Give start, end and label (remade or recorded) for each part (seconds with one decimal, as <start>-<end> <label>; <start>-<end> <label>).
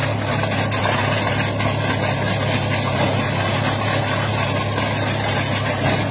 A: 0.0-6.1 recorded